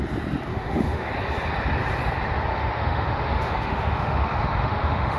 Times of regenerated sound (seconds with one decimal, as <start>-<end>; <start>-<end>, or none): 0.5-1.1; 2.5-5.2